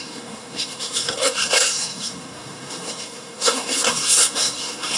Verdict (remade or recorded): remade